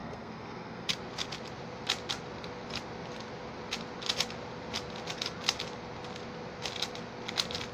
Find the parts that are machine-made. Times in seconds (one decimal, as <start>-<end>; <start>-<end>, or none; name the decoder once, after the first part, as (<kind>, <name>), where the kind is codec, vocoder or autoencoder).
0.0-0.9 (codec, SNAC)